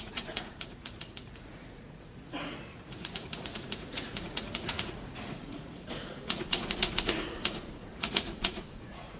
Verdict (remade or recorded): remade